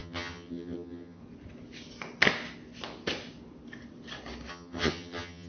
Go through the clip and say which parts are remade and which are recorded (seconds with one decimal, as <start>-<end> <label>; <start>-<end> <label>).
0.0-1.2 remade; 1.2-4.5 recorded; 4.5-5.5 remade